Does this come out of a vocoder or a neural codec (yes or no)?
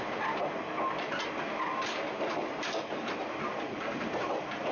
no